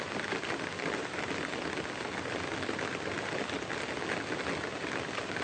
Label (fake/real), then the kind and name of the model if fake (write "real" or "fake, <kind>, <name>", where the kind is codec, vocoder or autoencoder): real